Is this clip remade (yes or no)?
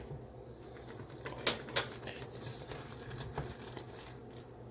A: no